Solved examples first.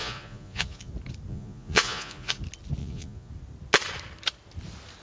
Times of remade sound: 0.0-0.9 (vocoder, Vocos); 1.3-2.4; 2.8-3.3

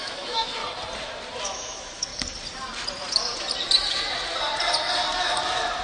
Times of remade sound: 0.0-0.6 (autoencoder, DAC-VAE); 1.4-2.1

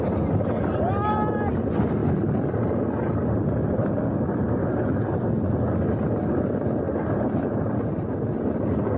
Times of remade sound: none

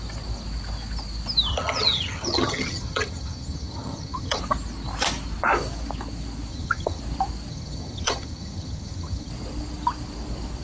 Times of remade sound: 1.5-4.4 (vocoder, HiFi-GAN); 6.5-7.0; 7.5-9.3